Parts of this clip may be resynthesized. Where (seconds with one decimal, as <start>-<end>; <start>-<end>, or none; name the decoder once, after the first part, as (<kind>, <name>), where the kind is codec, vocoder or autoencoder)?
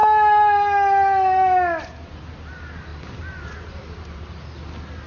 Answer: 2.9-4.3 (vocoder, BigVGAN v2)